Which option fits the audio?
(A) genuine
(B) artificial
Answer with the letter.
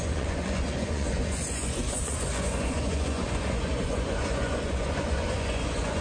B